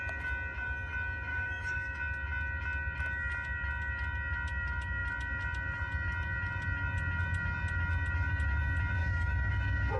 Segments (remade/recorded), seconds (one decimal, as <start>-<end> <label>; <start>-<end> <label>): 0.0-1.3 recorded; 1.3-2.0 remade; 2.0-9.0 recorded; 9.0-9.5 remade; 9.5-10.0 recorded